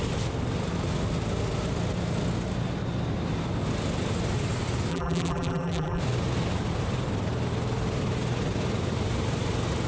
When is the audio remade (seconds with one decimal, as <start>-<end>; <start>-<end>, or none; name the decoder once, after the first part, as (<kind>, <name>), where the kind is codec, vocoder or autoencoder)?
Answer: 4.9-6.0 (vocoder, BigVGAN v2)